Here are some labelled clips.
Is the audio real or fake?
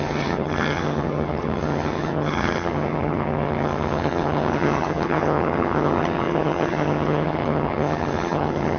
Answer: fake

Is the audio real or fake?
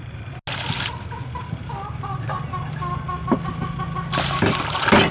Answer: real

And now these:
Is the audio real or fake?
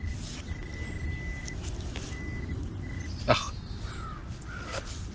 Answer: real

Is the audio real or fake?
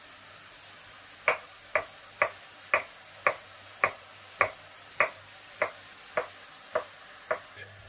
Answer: real